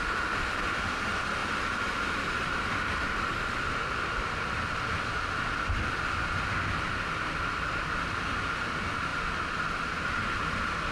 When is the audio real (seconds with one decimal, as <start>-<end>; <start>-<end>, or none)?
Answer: 0.0-1.4; 3.1-10.9